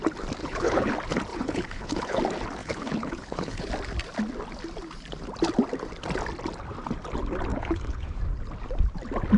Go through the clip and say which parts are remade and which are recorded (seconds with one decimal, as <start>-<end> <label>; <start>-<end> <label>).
0.0-0.4 recorded; 0.4-0.9 remade; 0.9-1.3 recorded; 1.3-2.2 remade; 2.2-2.6 recorded; 2.6-3.7 remade; 3.7-7.5 recorded; 7.5-8.2 remade; 8.2-9.4 recorded

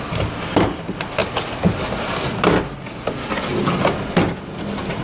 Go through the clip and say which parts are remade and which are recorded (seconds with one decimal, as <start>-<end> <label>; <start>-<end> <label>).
0.0-5.0 recorded